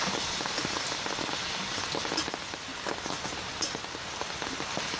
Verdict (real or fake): real